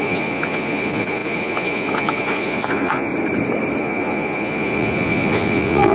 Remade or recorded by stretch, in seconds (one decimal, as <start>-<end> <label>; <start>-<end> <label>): 0.0-3.1 remade; 3.1-3.8 recorded; 3.8-5.9 remade